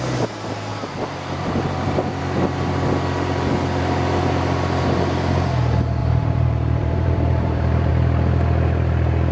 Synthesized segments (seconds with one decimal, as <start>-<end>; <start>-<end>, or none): 0.7-2.2; 6.0-7.9